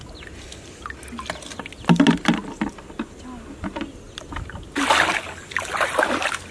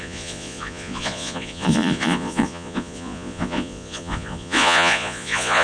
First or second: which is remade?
second